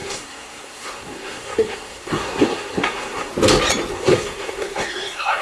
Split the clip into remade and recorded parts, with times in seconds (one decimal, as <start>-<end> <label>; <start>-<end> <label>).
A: 0.0-3.3 remade; 3.3-3.9 recorded; 3.9-5.4 remade